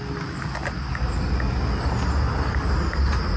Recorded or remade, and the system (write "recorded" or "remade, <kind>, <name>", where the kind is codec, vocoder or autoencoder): recorded